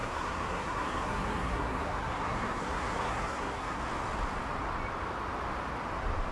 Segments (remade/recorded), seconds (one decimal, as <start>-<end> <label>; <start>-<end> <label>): 0.0-3.8 remade; 3.8-6.3 recorded